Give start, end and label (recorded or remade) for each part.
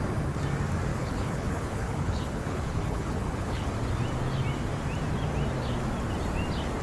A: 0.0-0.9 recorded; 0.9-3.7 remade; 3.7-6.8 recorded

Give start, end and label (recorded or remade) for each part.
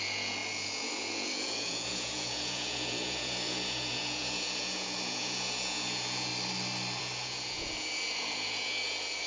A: 0.0-6.3 remade; 6.3-7.0 recorded; 7.0-9.3 remade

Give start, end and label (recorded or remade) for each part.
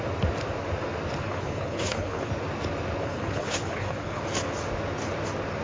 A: 0.0-1.2 recorded; 1.2-2.3 remade; 2.3-3.0 recorded; 3.0-4.2 remade; 4.2-5.6 recorded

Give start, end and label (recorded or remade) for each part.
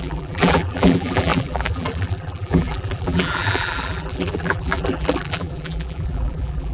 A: 0.0-6.7 remade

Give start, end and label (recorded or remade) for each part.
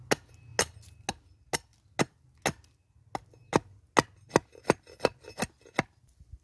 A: 0.0-6.4 recorded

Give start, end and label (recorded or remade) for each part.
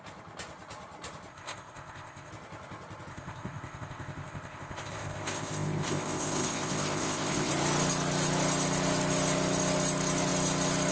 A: 0.0-1.3 recorded; 1.3-2.3 remade; 2.3-3.1 recorded; 3.1-7.5 remade; 7.5-10.9 recorded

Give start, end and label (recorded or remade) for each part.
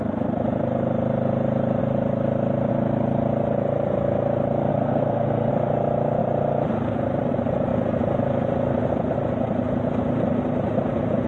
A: 0.0-4.7 recorded; 4.7-5.5 remade; 5.5-11.3 recorded